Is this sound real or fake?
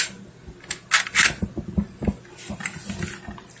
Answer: real